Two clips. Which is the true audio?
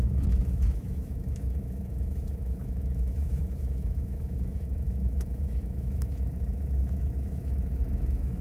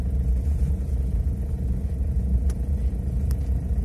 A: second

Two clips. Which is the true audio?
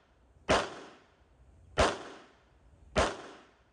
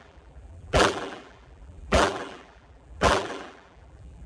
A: first